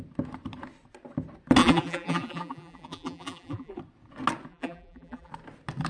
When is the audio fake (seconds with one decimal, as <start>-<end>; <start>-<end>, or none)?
1.6-3.8; 4.5-5.3

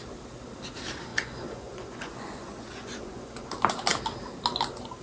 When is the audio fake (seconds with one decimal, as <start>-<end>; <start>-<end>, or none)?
1.1-3.5

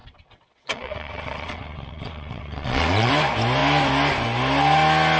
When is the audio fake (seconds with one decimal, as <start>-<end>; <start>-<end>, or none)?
0.0-3.1

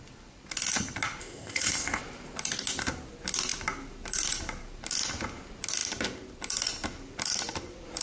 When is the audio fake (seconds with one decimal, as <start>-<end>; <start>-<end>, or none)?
1.2-2.0